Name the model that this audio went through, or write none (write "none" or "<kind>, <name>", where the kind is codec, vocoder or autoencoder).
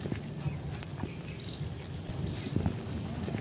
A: none